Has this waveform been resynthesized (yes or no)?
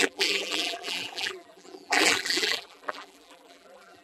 yes